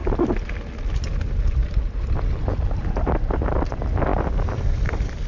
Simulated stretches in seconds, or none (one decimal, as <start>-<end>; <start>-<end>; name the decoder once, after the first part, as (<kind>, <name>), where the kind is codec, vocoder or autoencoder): 0.0-0.5 (vocoder, BigVGAN v2); 1.6-2.5; 4.1-5.3